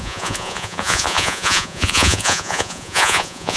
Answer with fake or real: fake